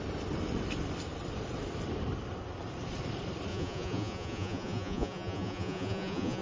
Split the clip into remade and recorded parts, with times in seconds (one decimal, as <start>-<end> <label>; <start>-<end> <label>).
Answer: 0.0-3.5 recorded; 3.5-6.4 remade